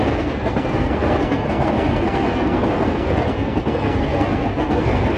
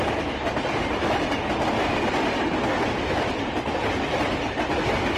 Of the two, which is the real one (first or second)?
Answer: second